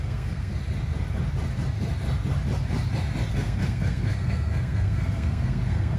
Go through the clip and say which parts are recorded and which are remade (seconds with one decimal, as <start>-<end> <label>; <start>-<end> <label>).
0.0-0.5 remade; 0.5-3.3 recorded; 3.3-6.0 remade